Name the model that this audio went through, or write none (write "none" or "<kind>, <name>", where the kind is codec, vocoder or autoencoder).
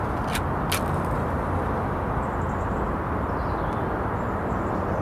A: none